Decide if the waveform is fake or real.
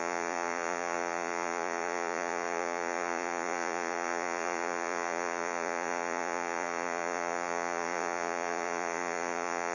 fake